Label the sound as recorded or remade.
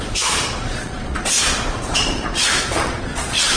remade